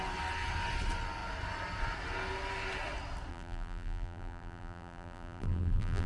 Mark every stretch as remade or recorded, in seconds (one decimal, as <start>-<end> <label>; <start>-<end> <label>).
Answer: 0.0-3.3 recorded; 3.3-6.1 remade